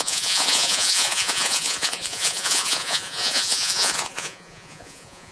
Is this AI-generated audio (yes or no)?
yes